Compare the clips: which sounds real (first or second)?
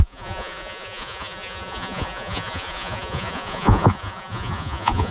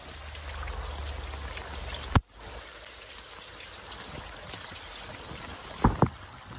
second